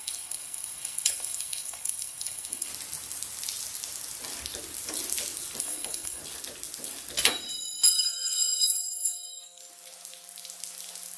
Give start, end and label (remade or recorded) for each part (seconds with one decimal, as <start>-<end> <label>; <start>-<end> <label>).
0.0-2.7 remade; 2.7-5.6 recorded; 5.6-6.2 remade; 6.2-7.9 recorded; 7.9-9.6 remade; 9.6-11.2 recorded